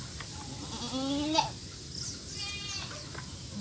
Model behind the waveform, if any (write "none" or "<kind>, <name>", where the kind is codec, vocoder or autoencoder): none